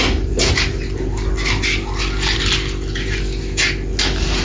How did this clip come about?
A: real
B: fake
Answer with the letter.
A